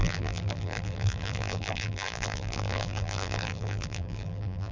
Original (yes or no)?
no